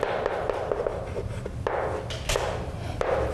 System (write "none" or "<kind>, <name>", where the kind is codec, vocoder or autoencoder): none